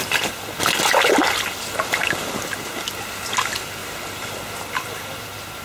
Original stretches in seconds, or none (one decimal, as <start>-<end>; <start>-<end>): 0.0-3.8; 4.4-5.6